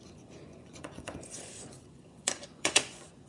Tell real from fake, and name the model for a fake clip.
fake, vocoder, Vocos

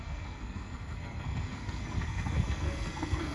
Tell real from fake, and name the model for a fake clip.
fake, codec, SNAC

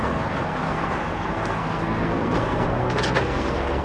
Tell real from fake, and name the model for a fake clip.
fake, codec, SNAC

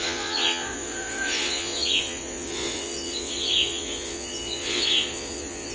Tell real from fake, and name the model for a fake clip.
fake, vocoder, Vocos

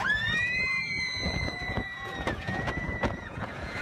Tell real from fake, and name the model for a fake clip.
fake, vocoder, Vocos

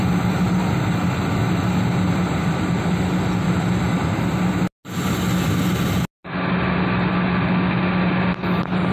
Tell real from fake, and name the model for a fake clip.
real